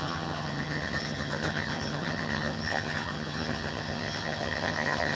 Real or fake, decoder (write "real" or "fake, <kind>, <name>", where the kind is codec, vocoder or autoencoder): fake, vocoder, HiFi-GAN